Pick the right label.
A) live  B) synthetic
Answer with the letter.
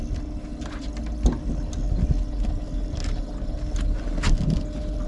A